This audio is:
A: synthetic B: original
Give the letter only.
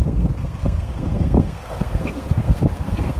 A